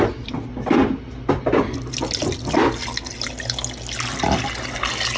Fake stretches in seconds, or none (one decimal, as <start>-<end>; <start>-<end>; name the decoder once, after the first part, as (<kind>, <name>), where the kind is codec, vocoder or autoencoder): none